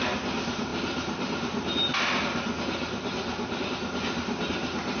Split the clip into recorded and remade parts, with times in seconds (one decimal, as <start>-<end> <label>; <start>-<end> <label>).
0.0-5.0 recorded